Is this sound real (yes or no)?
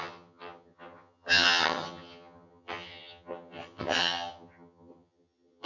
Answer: no